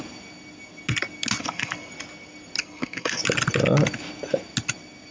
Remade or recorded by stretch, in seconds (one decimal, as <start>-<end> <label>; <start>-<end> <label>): 0.0-1.4 recorded; 1.4-1.9 remade; 1.9-2.6 recorded; 2.6-3.2 remade; 3.2-5.1 recorded